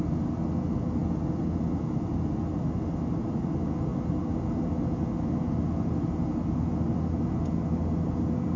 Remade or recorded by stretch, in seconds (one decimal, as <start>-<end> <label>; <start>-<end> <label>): 0.0-8.6 recorded